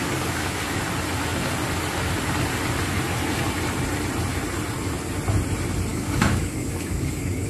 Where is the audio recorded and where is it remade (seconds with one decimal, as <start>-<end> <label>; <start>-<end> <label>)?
0.0-0.6 remade; 0.6-5.9 recorded; 5.9-7.5 remade